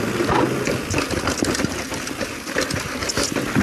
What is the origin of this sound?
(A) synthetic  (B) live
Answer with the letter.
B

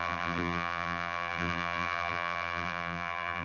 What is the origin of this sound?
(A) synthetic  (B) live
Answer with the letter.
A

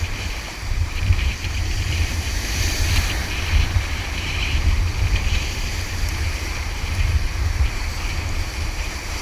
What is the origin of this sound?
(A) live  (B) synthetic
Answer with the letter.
B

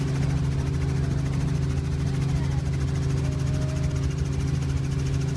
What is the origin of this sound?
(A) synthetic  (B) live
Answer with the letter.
B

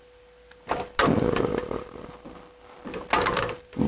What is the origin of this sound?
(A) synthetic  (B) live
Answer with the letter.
B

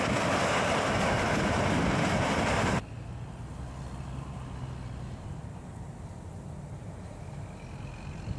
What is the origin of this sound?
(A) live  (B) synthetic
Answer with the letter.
A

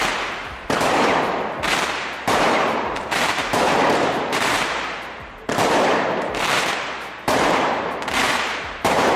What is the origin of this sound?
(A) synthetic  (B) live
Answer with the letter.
A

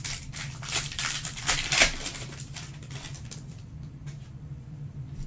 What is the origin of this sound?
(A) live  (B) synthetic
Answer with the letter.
B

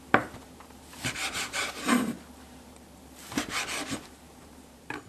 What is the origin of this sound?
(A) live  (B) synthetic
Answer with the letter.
B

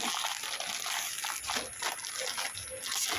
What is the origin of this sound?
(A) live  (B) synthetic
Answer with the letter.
A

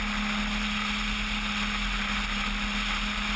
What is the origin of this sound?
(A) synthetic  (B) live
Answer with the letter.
B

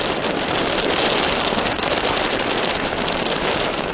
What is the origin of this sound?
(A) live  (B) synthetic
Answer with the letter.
B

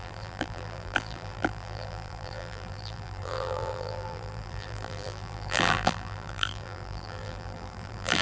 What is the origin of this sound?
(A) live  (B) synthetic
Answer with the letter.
B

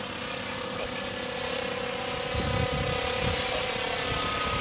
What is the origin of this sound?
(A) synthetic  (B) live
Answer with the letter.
B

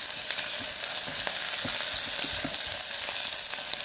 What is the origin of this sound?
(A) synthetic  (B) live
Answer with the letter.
B